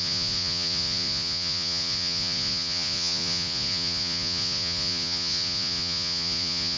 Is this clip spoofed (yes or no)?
yes